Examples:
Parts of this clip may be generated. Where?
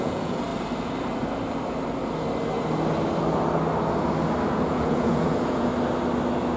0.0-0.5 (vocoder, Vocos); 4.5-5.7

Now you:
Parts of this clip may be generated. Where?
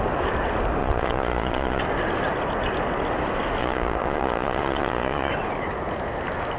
0.8-1.8 (vocoder, Vocos); 3.6-5.3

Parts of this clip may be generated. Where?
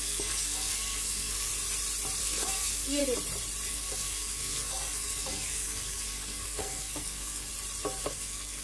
0.0-1.5 (codec, SNAC); 2.2-3.0; 3.7-7.5; 8.0-8.6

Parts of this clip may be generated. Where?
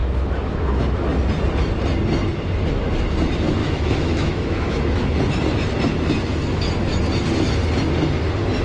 0.0-1.1 (autoencoder, DAC-VAE); 3.6-5.1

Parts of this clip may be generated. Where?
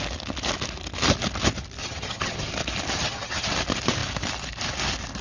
1.8-2.5 (vocoder, HiFi-GAN); 3.0-3.5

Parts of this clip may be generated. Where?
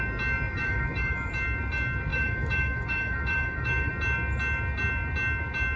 0.5-1.3 (autoencoder, DAC-VAE); 2.1-3.9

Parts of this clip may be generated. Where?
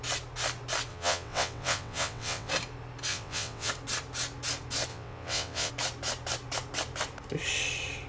0.9-2.5 (vocoder, WaveNeXt); 3.1-3.7; 4.9-5.7